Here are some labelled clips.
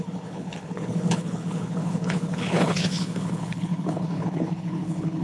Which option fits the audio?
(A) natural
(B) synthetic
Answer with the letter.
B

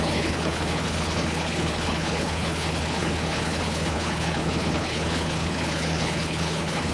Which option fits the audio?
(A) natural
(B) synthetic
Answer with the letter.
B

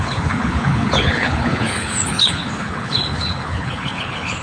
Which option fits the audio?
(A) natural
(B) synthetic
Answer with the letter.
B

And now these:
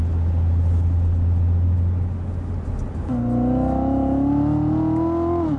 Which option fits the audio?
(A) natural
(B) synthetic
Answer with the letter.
A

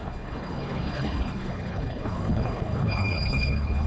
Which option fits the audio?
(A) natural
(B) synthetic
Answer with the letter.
B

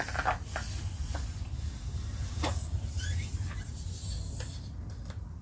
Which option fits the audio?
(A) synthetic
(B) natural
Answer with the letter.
B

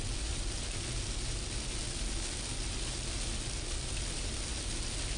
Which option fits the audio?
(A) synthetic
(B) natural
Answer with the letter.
B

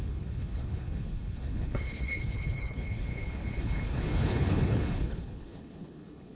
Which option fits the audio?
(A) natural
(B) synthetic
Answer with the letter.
B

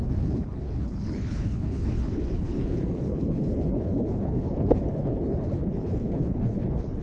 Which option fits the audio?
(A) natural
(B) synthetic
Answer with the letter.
B